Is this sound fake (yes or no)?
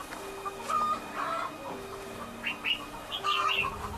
no